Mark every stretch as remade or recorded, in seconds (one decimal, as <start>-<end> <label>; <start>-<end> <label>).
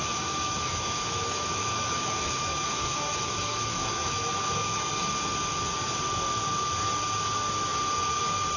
0.0-4.9 remade; 4.9-8.6 recorded